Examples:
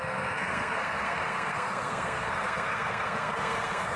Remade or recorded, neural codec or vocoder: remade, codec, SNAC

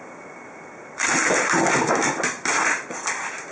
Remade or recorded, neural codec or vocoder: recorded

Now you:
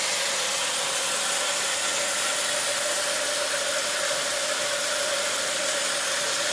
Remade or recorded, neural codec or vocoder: recorded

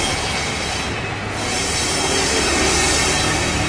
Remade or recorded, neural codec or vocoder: recorded